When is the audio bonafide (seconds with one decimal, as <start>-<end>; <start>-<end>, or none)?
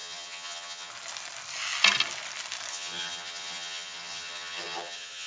0.9-2.7